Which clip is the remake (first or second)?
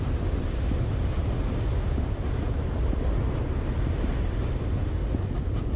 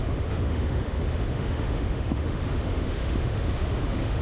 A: second